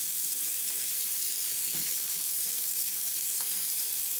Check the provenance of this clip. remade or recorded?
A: remade